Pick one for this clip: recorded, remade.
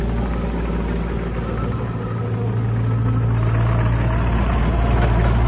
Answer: recorded